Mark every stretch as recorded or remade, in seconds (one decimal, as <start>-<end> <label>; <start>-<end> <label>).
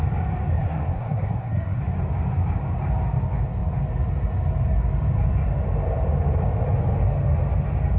0.0-0.5 recorded; 0.5-1.8 remade; 1.8-8.0 recorded